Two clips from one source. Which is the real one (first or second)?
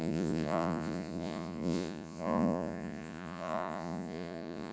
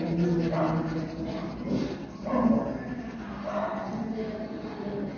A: second